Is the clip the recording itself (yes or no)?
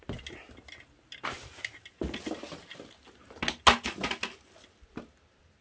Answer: yes